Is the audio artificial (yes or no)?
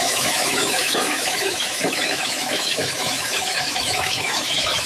yes